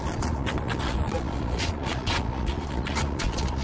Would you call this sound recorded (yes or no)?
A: no